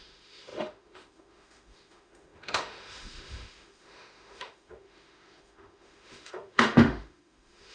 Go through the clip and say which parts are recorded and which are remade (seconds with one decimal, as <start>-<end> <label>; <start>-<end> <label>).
0.0-7.7 remade